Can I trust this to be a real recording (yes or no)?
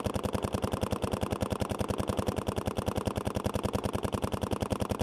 yes